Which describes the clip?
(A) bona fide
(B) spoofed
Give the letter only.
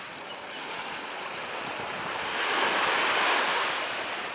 A